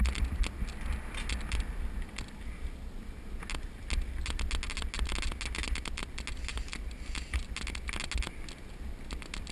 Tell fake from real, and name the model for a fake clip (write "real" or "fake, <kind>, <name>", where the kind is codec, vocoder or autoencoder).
real